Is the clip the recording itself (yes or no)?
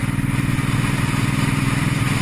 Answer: yes